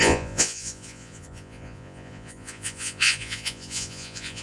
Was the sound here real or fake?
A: fake